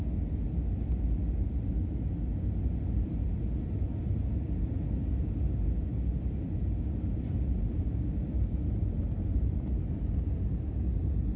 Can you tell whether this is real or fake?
real